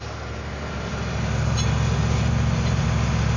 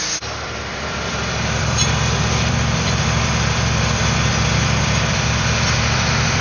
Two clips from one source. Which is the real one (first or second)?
first